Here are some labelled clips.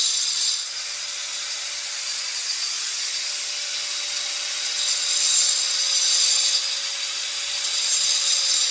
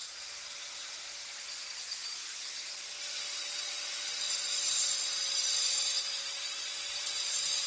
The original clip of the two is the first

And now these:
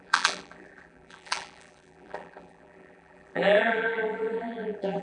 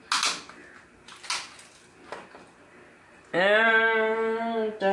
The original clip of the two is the second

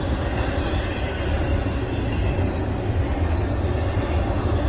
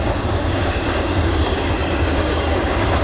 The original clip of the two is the first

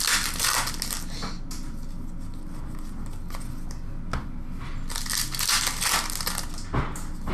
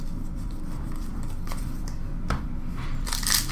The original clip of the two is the first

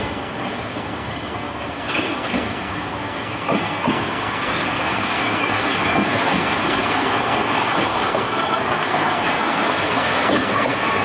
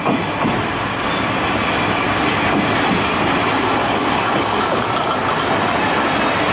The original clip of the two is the second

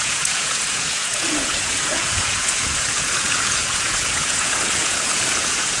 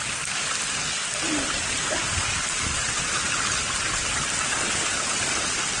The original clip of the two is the second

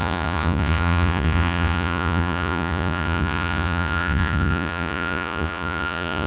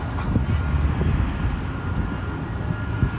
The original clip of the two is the second